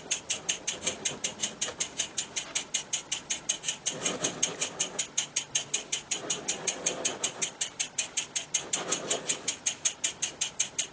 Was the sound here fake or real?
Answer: real